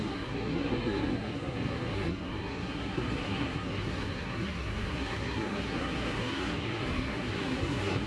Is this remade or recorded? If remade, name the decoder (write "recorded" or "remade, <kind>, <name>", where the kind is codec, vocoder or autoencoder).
remade, codec, SNAC